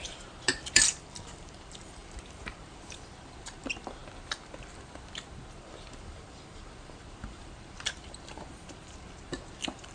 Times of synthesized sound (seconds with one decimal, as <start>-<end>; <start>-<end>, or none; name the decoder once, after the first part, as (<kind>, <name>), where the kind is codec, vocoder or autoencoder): 0.0-2.0 (vocoder, BigVGAN v2); 2.5-4.0; 5.6-9.9